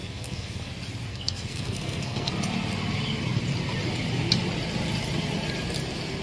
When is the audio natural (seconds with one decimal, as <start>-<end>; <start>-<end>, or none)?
0.7-1.1; 2.3-6.2